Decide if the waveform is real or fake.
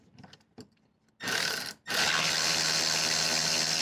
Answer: real